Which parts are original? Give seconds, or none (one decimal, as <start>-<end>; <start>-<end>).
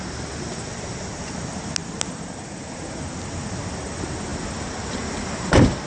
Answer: 0.0-5.9